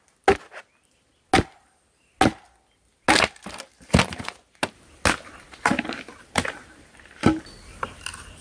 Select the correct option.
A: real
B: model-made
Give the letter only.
A